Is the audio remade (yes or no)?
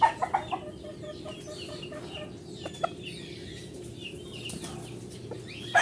no